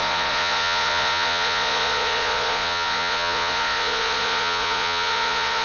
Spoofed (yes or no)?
yes